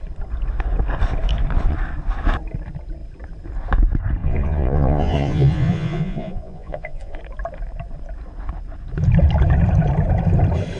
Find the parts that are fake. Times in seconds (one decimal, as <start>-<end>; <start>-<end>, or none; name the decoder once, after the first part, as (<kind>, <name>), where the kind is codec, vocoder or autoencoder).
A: 4.2-7.2 (vocoder, Vocos)